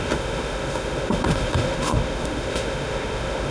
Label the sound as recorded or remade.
remade